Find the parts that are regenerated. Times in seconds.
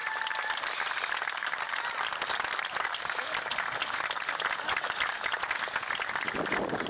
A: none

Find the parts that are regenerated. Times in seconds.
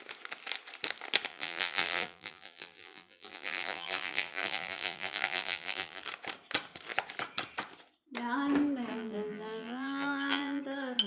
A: 1.3-6.0 (vocoder, BigVGAN v2); 8.9-10.6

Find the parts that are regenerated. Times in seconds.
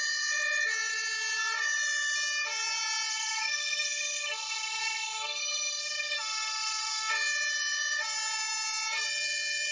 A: 3.1-7.1 (codec, SNAC)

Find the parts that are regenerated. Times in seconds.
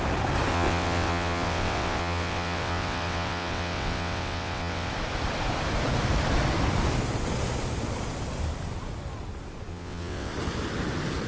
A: 0.5-4.9 (vocoder, WaveNeXt); 9.7-10.3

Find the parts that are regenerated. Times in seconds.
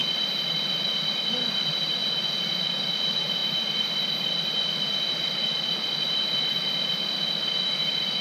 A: none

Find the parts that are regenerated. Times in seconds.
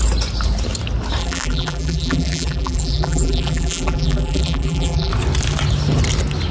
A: 1.2-5.1 (vocoder, BigVGAN v2)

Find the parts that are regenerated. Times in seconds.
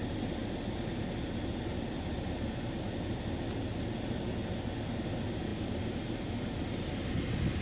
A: none